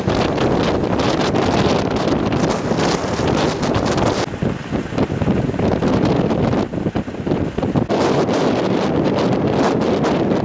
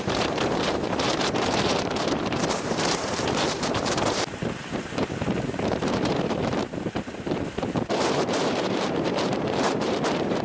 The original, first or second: first